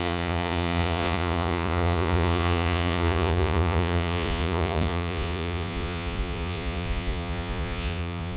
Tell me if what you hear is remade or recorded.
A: remade